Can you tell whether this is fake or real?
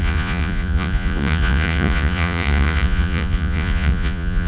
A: fake